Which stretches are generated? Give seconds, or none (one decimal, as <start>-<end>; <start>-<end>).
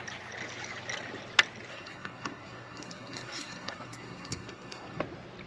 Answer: 1.7-5.0